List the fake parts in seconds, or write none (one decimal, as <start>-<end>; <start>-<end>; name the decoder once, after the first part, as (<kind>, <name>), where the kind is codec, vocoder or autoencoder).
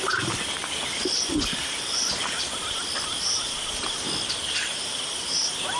none